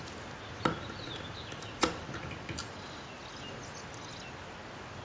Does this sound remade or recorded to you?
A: recorded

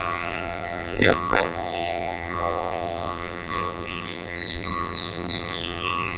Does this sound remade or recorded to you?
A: remade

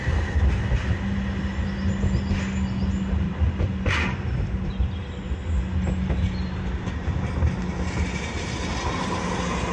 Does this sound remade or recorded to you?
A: recorded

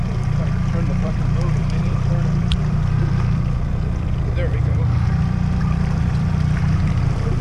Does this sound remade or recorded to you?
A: remade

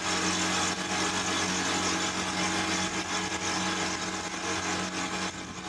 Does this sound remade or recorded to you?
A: recorded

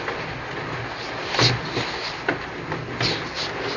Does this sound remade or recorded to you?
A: recorded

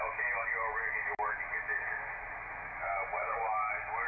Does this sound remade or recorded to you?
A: recorded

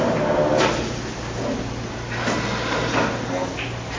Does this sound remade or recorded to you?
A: recorded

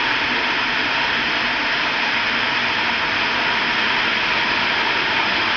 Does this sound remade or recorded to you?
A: recorded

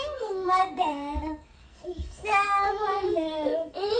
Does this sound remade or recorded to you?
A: remade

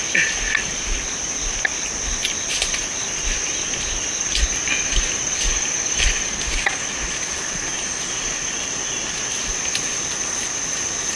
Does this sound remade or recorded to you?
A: recorded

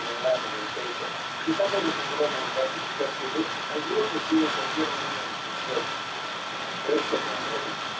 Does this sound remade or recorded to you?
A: recorded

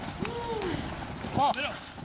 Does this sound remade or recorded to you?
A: recorded